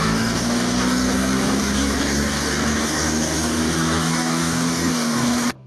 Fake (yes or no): yes